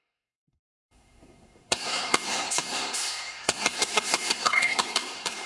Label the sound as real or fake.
fake